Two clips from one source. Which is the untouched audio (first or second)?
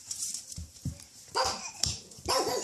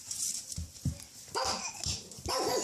second